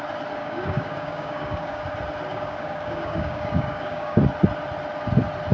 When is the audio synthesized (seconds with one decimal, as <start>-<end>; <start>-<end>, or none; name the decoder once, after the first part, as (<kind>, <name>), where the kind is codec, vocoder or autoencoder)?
0.4-1.8 (codec, DAC); 2.3-4.2